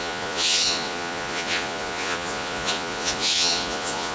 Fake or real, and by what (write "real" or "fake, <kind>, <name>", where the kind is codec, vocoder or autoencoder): fake, vocoder, Vocos